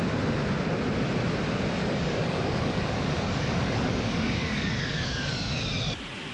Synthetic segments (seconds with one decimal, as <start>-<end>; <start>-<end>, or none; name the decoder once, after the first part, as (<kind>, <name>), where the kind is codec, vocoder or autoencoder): 1.8-5.6 (codec, DAC)